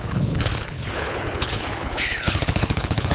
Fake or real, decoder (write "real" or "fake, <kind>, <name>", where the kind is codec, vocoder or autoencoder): fake, codec, HILCodec